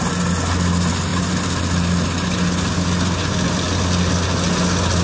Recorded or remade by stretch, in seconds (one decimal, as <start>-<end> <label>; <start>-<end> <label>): 0.0-5.0 recorded